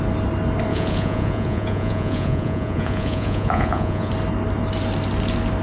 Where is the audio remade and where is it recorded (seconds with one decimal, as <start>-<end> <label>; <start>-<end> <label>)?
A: 0.0-0.7 recorded; 0.7-4.1 remade; 4.1-5.6 recorded